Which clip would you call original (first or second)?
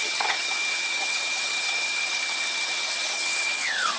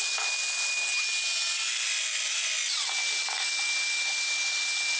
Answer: second